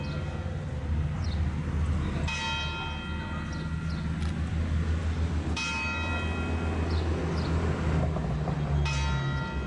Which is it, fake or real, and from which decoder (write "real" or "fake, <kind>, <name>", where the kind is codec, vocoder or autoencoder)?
real